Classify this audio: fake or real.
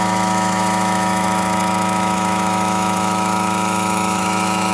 fake